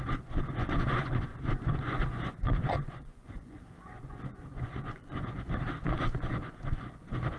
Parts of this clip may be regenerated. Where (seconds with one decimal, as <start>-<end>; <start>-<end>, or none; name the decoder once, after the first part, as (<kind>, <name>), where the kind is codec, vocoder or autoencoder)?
0.0-7.4 (vocoder, Vocos)